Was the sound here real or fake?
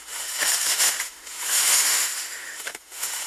fake